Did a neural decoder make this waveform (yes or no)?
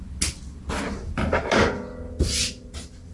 no